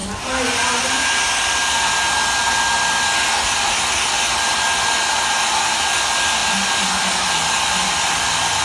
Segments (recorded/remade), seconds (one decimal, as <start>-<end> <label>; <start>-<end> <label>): 0.0-8.6 recorded